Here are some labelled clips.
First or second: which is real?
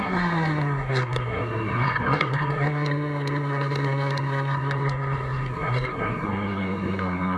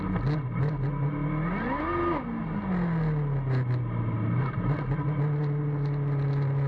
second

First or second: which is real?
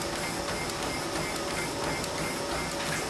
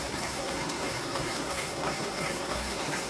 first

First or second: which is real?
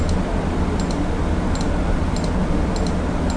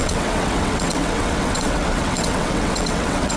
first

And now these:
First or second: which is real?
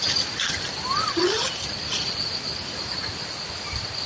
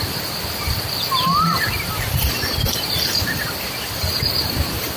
first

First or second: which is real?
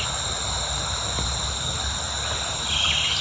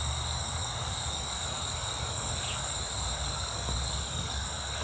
first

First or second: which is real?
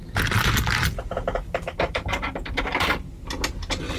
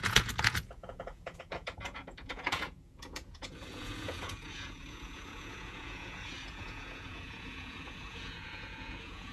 first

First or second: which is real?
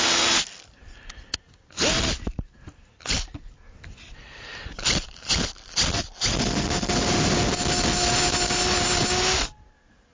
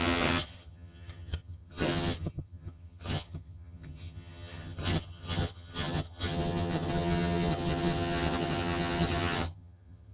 first